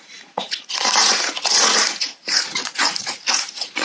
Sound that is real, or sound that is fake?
fake